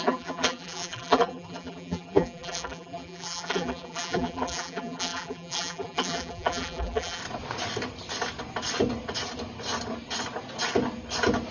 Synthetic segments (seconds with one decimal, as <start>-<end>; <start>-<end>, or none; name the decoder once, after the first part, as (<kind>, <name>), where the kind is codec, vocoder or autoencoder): 0.0-7.2 (vocoder, BigVGAN v2)